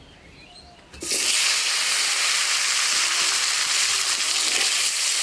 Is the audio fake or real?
real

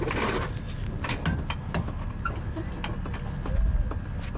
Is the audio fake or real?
real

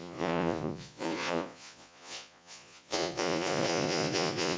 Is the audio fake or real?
fake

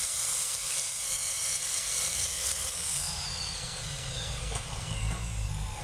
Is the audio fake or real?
fake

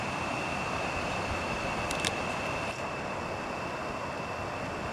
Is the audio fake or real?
real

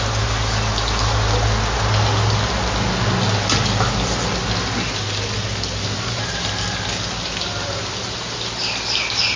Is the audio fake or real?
real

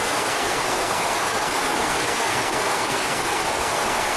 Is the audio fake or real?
fake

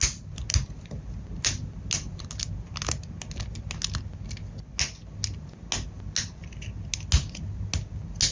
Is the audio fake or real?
real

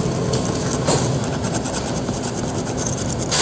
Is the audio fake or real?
real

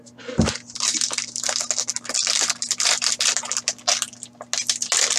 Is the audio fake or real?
real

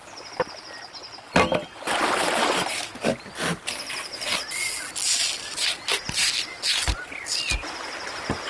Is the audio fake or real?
real